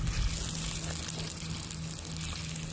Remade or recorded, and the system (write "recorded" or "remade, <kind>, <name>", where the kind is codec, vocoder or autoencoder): recorded